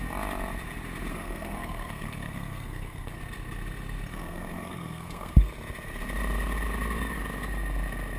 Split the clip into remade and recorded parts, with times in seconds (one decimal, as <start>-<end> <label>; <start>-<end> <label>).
0.0-1.1 recorded; 1.1-3.2 remade; 3.2-4.1 recorded; 4.1-5.5 remade; 5.5-8.2 recorded